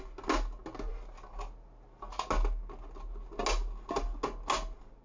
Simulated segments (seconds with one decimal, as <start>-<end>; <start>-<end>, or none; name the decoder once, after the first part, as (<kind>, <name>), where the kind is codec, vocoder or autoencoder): none